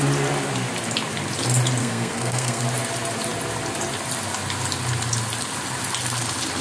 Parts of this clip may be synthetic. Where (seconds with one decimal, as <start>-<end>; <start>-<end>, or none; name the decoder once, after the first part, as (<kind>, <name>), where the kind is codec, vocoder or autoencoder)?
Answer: 1.8-2.6 (codec, SNAC)